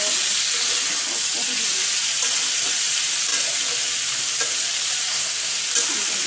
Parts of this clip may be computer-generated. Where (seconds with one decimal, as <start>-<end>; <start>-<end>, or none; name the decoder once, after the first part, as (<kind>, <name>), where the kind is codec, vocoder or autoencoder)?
5.1-5.6 (codec, SNAC)